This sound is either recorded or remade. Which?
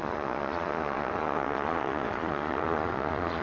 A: remade